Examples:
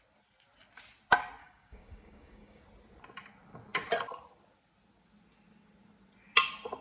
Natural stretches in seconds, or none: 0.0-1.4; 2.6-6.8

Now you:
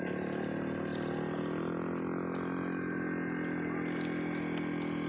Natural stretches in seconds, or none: 0.0-5.1

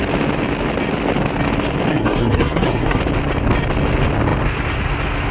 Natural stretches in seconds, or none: 0.0-1.9; 3.0-5.3

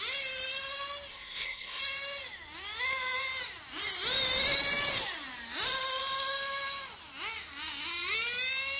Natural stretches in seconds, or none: 0.0-1.1; 1.8-8.8

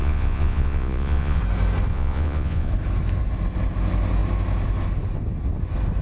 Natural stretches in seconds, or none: 1.4-1.9; 2.7-6.0